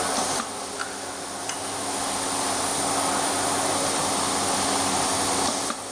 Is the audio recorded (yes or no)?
yes